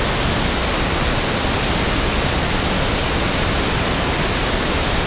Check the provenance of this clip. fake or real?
real